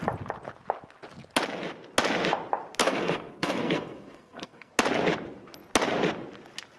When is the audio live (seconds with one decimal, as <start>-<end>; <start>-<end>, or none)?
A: 0.0-2.8; 4.7-6.8